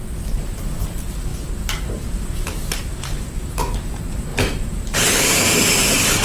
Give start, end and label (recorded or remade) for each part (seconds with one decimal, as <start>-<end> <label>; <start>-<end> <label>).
0.0-1.3 recorded; 1.3-3.3 remade; 3.3-4.3 recorded; 4.3-5.6 remade; 5.6-6.2 recorded